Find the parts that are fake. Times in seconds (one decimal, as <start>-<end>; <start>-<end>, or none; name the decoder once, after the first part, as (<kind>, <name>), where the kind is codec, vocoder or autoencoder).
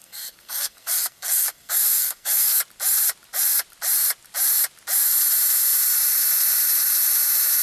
0.0-2.6 (codec, SNAC)